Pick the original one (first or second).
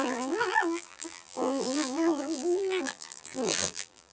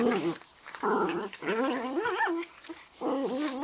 second